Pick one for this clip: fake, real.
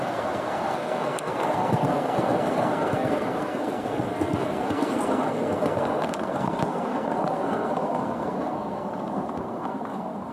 fake